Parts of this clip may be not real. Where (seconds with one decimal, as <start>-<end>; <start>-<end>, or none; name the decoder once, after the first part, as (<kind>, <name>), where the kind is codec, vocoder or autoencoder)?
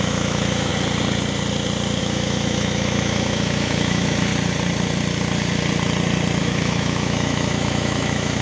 0.0-0.7 (autoencoder, DAC-VAE); 2.0-4.3; 6.4-8.4